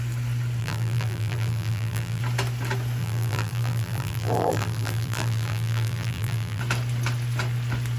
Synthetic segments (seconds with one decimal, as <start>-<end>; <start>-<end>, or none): 0.6-2.2; 3.0-6.6